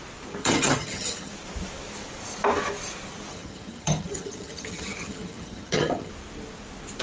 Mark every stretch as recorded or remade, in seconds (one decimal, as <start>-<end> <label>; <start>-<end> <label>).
0.0-0.4 recorded; 0.4-1.3 remade; 1.3-3.3 recorded; 3.3-6.1 remade; 6.1-7.0 recorded